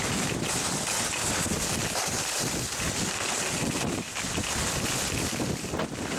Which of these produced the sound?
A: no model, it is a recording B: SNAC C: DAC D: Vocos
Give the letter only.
A